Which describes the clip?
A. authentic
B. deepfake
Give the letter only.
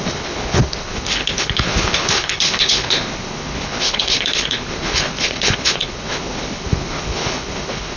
B